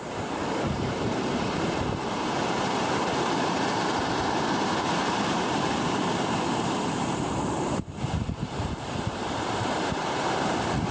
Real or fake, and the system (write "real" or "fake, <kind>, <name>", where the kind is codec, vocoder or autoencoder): fake, vocoder, BigVGAN v2